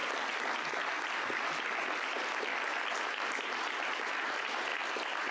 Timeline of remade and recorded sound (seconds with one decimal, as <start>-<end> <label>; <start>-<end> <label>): 0.0-5.3 recorded